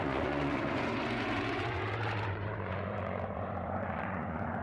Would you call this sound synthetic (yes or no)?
yes